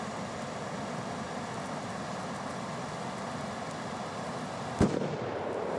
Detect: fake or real real